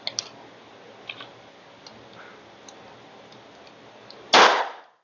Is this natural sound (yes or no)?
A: yes